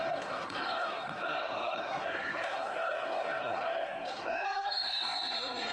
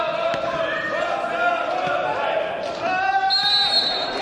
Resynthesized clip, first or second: first